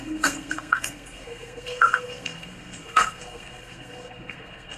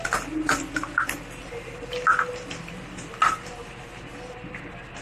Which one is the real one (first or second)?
second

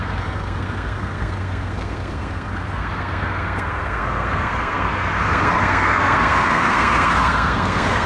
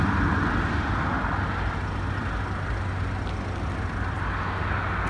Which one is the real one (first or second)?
second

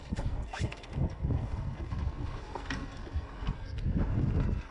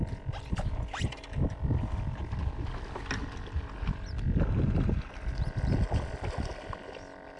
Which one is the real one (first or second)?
second